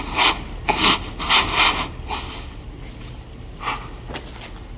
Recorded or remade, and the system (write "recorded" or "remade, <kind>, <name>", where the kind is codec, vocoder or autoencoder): recorded